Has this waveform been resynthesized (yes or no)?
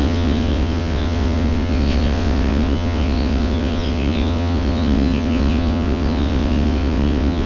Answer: yes